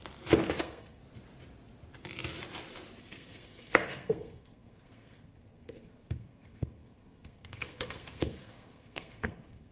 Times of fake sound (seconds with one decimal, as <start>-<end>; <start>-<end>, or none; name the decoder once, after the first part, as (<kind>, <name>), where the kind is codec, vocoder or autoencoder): 0.6-1.0 (codec, SNAC); 3.1-9.7